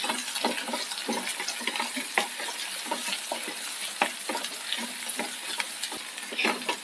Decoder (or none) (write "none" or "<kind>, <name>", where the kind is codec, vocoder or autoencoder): none